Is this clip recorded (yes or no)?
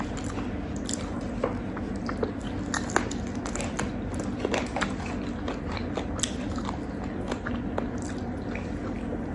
yes